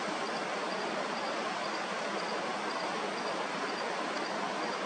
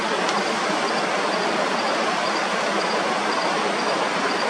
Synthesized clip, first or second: second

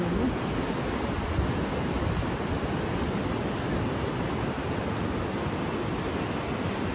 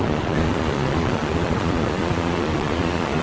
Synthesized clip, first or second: second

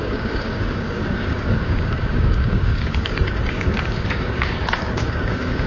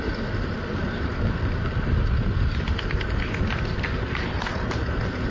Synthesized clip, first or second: first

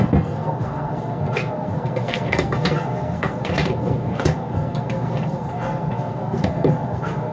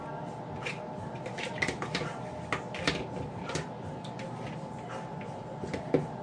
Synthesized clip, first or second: first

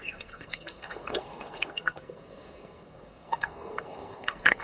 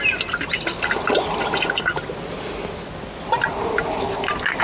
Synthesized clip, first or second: first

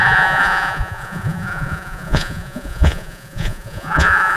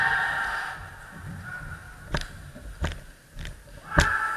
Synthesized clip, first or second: first